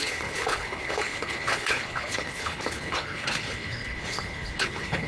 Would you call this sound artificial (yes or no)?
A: yes